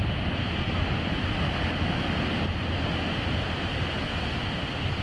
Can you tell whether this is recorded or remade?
recorded